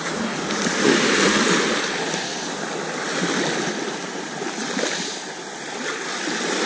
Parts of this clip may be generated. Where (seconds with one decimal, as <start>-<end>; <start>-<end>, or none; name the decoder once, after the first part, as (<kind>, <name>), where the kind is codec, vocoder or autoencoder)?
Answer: none